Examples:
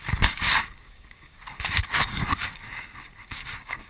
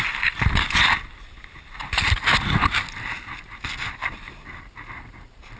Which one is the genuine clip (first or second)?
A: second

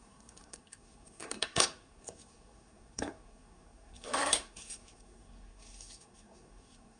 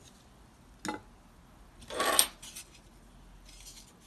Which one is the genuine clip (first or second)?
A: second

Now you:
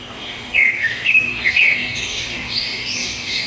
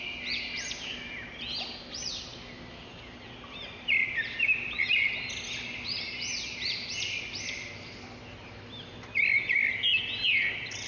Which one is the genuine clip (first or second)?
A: second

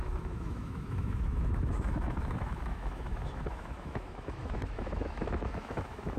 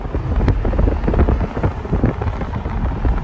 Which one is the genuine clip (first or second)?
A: second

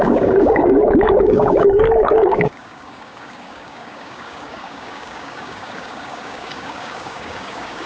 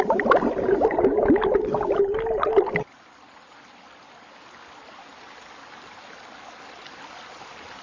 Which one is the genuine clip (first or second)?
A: second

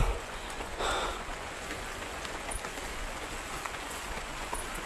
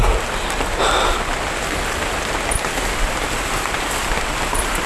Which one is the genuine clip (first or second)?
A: second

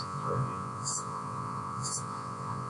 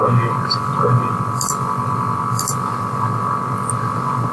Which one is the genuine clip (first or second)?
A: second